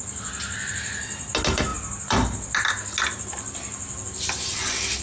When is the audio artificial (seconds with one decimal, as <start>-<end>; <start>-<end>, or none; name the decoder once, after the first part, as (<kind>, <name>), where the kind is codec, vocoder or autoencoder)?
none